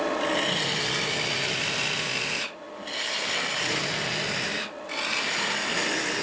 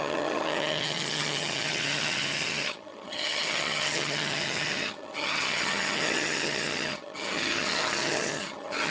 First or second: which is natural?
first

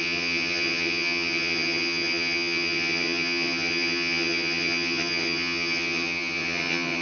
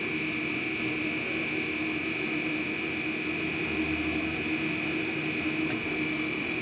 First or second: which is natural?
second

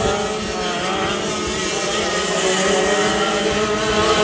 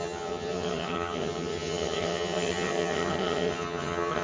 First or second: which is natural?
first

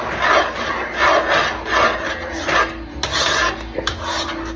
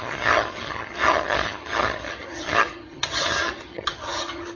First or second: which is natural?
first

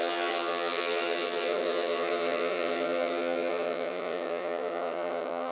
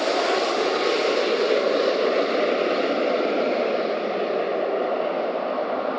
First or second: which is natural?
second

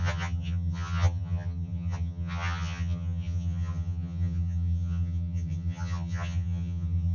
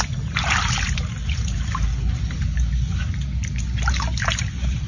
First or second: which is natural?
second